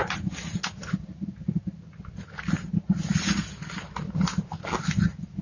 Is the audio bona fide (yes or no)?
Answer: yes